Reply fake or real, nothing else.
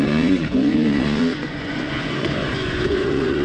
fake